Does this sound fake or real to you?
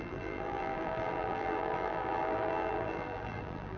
fake